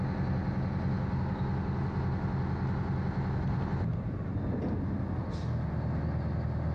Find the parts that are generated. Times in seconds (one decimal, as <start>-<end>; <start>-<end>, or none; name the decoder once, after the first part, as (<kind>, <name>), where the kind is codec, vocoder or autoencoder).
3.9-4.8 (vocoder, BigVGAN v2)